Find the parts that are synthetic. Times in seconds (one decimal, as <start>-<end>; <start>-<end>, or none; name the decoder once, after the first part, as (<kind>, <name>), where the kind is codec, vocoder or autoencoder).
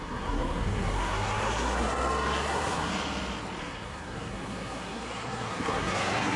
0.0-2.9 (codec, SNAC); 3.6-6.4